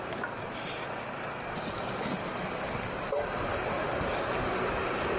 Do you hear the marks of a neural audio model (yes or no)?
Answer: no